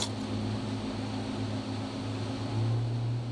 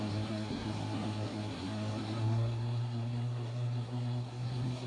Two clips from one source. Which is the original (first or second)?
first